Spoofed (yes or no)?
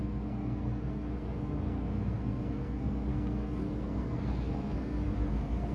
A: yes